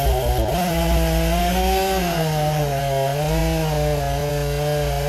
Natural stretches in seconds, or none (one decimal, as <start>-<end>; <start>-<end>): 0.0-1.4; 2.8-5.1